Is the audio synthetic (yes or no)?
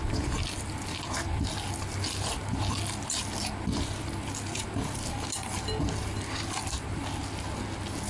no